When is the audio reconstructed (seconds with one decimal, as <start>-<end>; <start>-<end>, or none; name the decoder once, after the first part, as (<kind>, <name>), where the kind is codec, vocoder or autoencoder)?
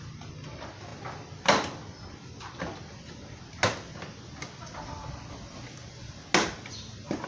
none